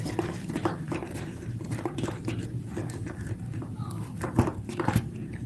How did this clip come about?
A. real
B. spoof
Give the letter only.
B